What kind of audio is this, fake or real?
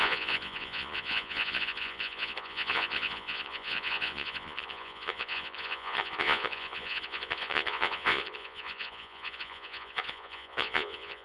fake